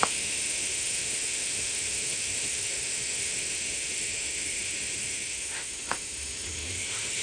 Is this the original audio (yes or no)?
no